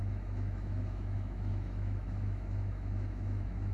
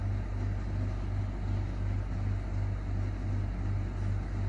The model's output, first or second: first